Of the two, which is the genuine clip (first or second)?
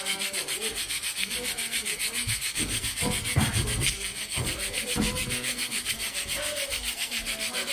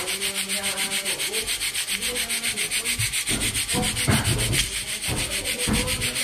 second